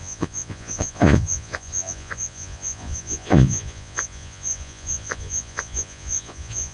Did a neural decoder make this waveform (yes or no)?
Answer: yes